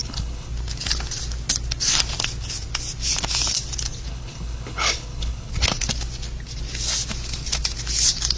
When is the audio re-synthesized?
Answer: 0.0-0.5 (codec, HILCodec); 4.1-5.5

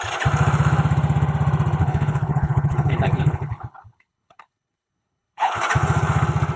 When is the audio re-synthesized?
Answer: 1.8-5.6 (codec, HILCodec)

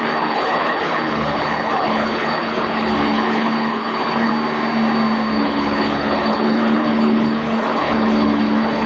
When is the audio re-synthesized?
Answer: 0.0-4.3 (codec, HILCodec); 5.3-8.9

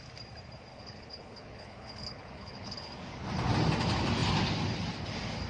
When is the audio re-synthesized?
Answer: 0.7-2.9 (codec, HILCodec)

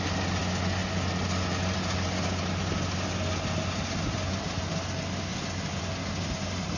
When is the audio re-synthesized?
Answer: none

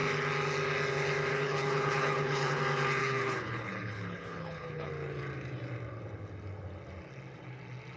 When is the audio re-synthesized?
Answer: 1.3-2.6 (codec, HILCodec); 3.0-4.9

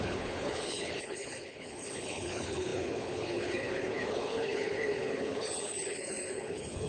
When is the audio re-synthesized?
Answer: 0.0-6.9 (codec, HILCodec)

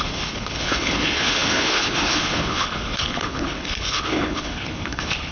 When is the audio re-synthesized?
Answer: 0.0-5.3 (codec, HILCodec)